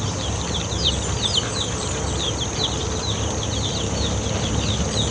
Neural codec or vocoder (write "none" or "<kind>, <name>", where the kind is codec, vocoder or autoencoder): none